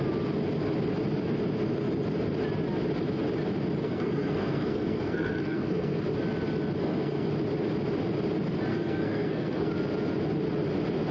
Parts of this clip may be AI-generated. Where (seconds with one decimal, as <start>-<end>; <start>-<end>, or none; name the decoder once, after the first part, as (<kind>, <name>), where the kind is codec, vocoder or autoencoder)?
3.8-6.0 (codec, SNAC); 6.8-7.3; 8.7-9.7